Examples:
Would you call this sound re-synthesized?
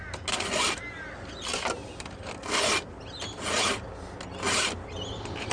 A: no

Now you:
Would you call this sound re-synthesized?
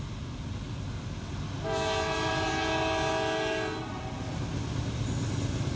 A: no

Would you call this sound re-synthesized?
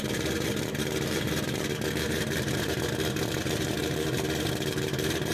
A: yes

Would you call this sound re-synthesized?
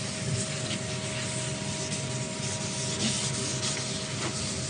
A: no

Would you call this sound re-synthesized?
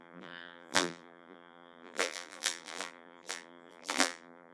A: yes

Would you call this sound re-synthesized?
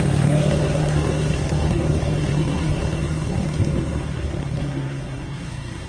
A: yes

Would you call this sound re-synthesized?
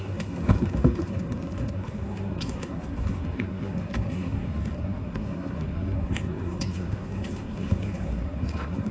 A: yes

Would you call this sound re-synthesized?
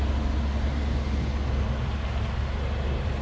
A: no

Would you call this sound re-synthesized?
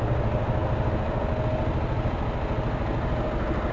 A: no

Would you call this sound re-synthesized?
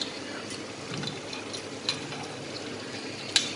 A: no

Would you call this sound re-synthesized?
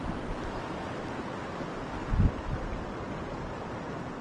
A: no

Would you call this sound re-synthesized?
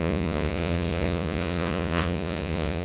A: yes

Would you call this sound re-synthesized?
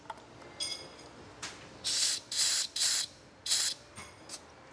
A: no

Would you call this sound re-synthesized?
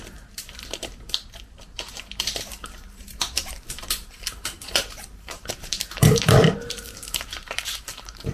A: yes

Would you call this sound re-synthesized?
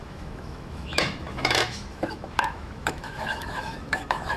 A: yes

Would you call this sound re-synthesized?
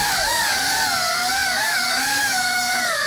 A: yes